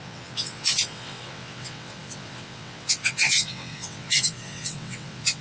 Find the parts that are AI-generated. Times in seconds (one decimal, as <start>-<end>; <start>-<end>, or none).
0.0-5.4